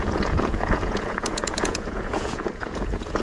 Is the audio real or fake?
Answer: fake